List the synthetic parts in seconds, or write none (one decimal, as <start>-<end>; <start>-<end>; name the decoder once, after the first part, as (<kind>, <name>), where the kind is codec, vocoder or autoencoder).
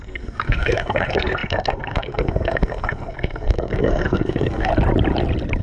0.0-4.7 (codec, SNAC)